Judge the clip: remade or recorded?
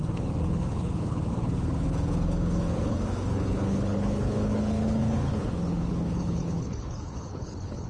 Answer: remade